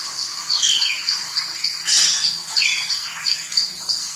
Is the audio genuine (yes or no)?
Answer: no